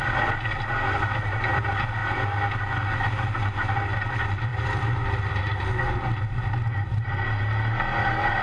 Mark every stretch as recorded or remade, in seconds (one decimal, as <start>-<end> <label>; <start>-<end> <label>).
0.0-4.5 recorded; 4.5-5.4 remade; 5.4-8.4 recorded